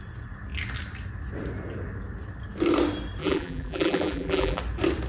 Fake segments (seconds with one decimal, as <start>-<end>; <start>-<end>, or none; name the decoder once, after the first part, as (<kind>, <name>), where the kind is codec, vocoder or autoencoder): 3.2-4.6 (vocoder, BigVGAN v2)